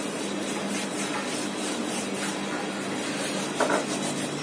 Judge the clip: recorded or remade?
recorded